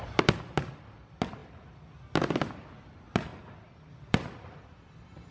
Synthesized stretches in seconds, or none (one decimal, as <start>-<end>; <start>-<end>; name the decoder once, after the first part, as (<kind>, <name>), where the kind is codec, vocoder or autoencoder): none